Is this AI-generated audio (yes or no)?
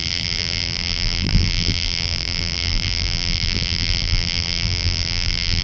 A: yes